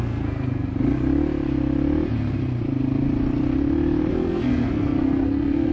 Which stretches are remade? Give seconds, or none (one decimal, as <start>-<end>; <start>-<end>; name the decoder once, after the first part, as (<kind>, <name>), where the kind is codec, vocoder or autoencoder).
0.0-0.7 (codec, SNAC); 4.1-5.7